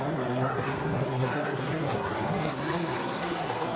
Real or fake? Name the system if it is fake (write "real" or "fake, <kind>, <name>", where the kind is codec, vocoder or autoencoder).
fake, codec, SNAC